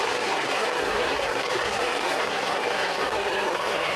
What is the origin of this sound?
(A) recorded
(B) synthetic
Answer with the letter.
B